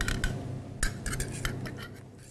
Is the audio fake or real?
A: real